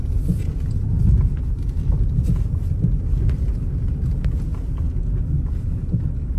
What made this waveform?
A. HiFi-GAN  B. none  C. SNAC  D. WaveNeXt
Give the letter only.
B